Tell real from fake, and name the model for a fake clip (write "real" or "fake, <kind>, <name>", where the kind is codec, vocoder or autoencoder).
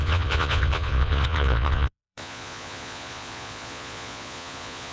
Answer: fake, vocoder, Vocos